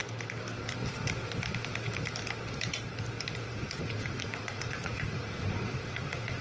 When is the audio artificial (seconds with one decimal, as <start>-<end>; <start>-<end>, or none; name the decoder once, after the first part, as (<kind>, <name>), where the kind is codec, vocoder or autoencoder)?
3.5-6.4 (vocoder, Vocos)